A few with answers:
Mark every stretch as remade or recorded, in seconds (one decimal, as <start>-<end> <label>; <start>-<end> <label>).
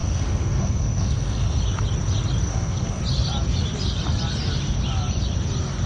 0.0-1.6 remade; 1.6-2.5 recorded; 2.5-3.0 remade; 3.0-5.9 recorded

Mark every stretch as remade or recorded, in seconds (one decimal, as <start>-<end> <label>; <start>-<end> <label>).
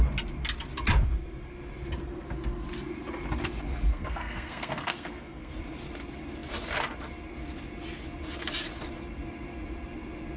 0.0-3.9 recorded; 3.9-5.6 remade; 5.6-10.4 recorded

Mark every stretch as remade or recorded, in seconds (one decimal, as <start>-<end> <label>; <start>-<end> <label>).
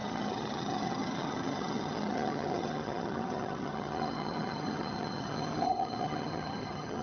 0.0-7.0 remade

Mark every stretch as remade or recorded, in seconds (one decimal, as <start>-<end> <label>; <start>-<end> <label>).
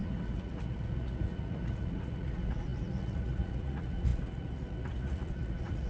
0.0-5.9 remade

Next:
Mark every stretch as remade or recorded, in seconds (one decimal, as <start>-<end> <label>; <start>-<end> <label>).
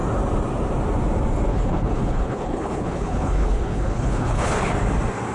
0.0-1.5 recorded; 1.5-4.7 remade; 4.7-5.3 recorded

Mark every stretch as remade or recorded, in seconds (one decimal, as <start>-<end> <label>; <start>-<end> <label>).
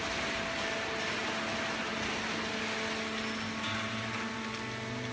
0.0-5.1 recorded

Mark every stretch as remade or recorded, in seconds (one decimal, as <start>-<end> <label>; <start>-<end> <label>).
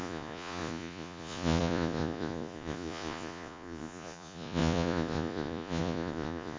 0.0-6.6 remade